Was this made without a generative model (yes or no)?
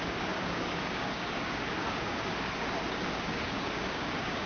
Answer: no